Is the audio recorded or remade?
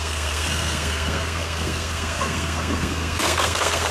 remade